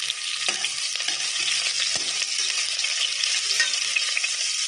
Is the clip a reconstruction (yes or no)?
yes